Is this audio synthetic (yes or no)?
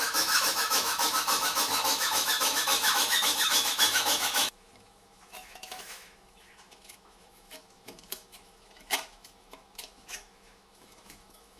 yes